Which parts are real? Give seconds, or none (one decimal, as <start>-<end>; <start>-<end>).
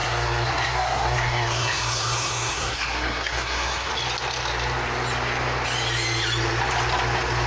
3.9-7.5